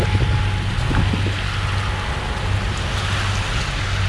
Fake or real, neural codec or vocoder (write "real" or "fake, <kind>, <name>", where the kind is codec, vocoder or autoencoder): real